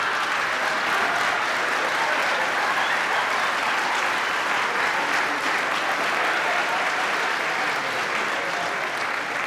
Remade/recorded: recorded